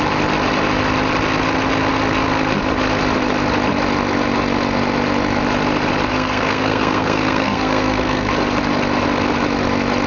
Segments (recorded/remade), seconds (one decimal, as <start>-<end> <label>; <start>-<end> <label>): 0.0-6.1 recorded; 6.1-8.3 remade; 8.3-10.1 recorded